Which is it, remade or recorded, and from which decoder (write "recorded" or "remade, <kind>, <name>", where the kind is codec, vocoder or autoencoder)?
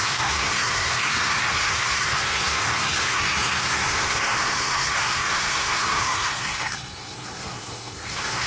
remade, codec, SNAC